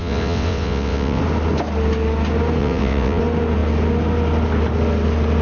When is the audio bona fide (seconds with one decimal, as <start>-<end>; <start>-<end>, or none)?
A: 1.2-2.6; 3.2-5.4